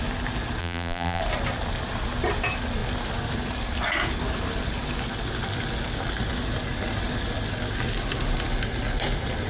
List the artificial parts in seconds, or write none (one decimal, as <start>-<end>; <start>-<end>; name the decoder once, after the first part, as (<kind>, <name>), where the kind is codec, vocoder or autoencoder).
0.6-1.2 (vocoder, BigVGAN v2)